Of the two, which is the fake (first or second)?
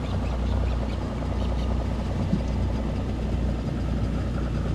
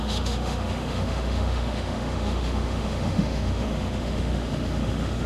second